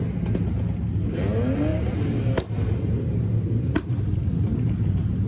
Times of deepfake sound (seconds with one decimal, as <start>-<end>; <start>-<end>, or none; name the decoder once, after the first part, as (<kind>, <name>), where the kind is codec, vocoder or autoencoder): 1.7-4.0 (vocoder, BigVGAN v2)